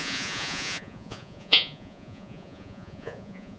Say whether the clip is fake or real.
fake